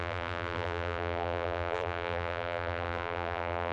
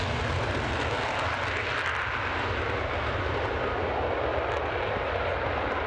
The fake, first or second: first